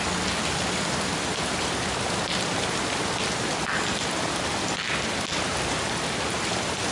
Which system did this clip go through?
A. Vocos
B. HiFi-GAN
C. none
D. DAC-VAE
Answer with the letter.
C